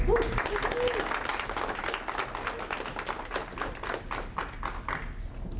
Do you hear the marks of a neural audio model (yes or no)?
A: no